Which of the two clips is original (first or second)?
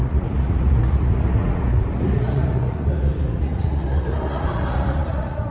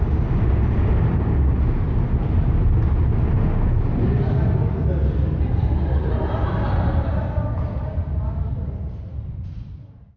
second